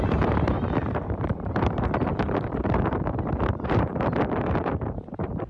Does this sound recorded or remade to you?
remade